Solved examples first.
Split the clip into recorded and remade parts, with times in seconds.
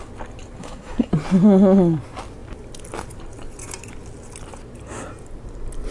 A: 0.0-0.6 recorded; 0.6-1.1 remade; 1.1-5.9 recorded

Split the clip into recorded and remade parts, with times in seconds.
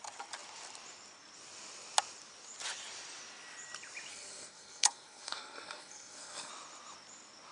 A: 0.0-4.1 recorded; 4.1-6.5 remade; 6.5-7.5 recorded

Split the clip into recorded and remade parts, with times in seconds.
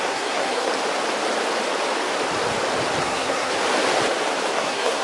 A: 0.0-0.7 remade; 0.7-3.0 recorded; 3.0-3.5 remade; 3.5-4.5 recorded; 4.5-5.0 remade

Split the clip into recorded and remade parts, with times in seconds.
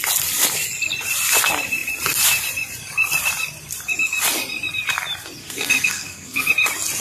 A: 0.0-5.4 recorded; 5.4-6.5 remade; 6.5-7.0 recorded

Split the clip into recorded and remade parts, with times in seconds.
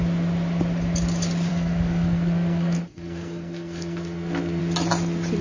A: 0.0-1.5 recorded; 1.5-4.6 remade; 4.6-5.4 recorded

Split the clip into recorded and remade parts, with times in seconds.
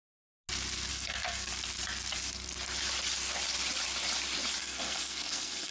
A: 0.0-0.9 recorded; 0.9-1.5 remade; 1.5-4.6 recorded; 4.6-5.7 remade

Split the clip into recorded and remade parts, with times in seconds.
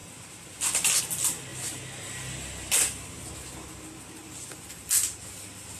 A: 0.0-5.8 recorded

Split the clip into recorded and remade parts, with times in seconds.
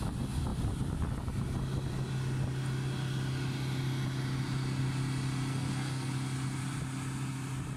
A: 0.0-5.5 recorded; 5.5-6.1 remade; 6.1-7.8 recorded